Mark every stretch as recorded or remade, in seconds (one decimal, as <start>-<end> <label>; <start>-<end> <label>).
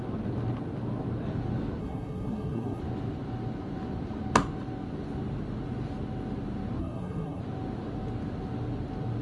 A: 0.0-1.8 recorded; 1.8-2.8 remade; 2.8-6.8 recorded; 6.8-7.4 remade; 7.4-9.2 recorded